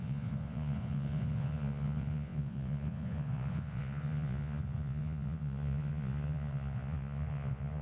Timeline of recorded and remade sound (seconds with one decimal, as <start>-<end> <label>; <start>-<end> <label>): 0.0-7.8 remade